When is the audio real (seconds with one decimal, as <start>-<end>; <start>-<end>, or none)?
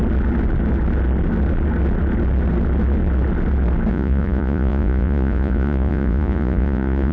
0.0-3.9